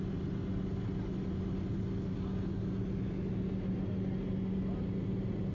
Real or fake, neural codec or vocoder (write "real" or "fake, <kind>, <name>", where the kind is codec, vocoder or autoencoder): real